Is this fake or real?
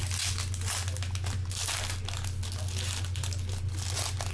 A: real